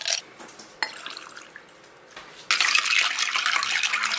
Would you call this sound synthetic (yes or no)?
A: no